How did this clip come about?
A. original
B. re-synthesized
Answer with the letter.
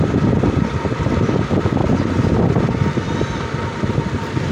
A